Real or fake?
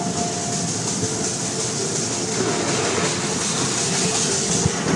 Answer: real